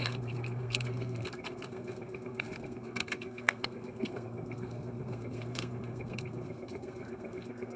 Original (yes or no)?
no